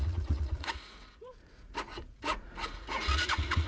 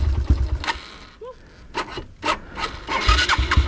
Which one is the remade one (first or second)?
first